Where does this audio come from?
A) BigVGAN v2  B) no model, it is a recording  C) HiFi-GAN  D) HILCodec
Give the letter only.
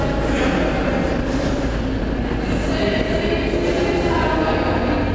B